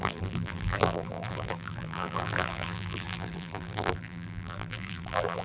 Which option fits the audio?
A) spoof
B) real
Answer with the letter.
A